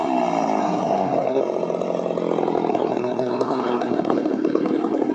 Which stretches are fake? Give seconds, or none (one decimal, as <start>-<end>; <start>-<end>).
0.6-1.4; 2.7-5.1